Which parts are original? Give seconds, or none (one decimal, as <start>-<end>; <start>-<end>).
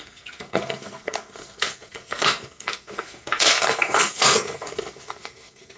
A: none